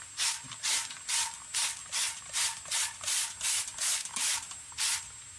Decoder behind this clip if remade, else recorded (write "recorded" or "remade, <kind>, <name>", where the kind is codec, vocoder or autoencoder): recorded